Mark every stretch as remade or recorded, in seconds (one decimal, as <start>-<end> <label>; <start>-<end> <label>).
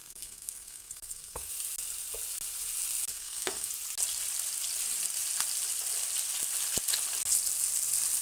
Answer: 0.0-1.5 remade; 1.5-3.1 recorded; 3.1-3.7 remade; 3.7-8.2 recorded